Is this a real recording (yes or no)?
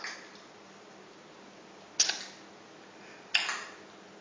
yes